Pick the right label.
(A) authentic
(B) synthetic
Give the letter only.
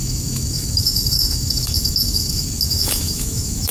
B